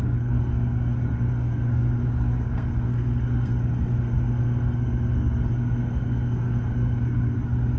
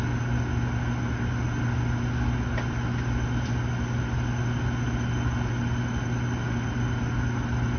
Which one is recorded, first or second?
second